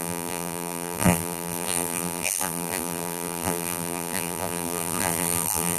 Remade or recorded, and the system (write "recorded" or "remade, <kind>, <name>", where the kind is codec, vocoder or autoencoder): remade, vocoder, BigVGAN v2